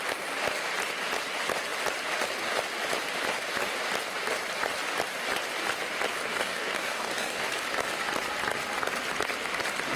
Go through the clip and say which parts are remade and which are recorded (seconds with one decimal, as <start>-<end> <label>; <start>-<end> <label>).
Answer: 0.0-6.3 recorded; 6.3-7.5 remade; 7.5-10.0 recorded